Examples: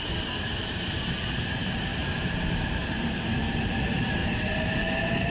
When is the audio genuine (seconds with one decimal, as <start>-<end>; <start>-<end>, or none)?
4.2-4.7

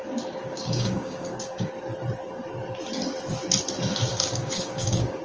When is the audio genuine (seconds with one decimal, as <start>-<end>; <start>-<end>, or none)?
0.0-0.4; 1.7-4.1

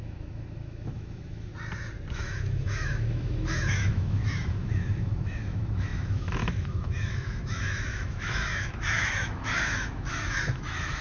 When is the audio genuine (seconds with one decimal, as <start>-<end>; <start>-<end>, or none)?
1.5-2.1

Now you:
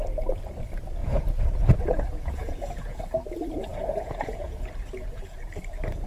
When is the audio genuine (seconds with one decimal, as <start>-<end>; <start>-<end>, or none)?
0.0-1.0; 3.0-3.7; 4.5-5.0; 5.5-6.1

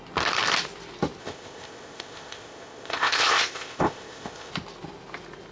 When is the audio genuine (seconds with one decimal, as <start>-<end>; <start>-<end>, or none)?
0.0-1.2; 4.5-5.5